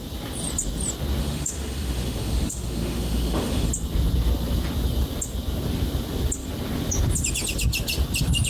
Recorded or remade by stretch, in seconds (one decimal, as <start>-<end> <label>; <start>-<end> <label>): 0.0-1.2 recorded; 1.2-3.7 remade; 3.7-8.5 recorded